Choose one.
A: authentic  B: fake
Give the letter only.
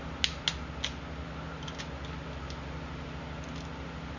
A